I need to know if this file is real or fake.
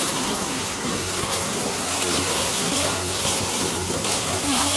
fake